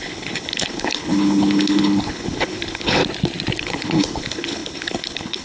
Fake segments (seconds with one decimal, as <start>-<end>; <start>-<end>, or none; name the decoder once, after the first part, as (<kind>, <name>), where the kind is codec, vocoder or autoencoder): 0.0-3.0 (codec, HILCodec); 3.6-5.4